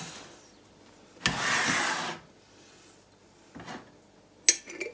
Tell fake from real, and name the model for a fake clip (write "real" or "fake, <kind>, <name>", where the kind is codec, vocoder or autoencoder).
real